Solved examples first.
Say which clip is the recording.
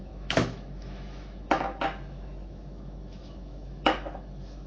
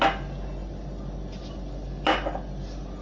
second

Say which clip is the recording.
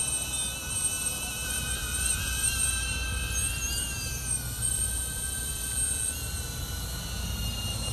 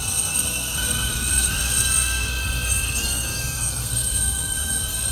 first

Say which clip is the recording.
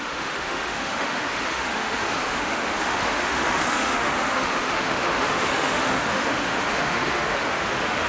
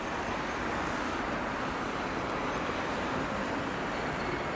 second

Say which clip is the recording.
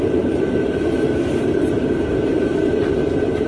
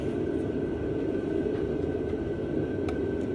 second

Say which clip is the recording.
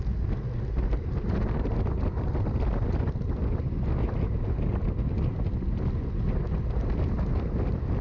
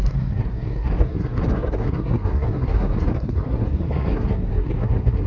first